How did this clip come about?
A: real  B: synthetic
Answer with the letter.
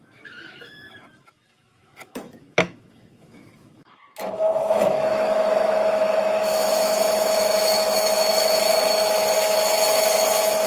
B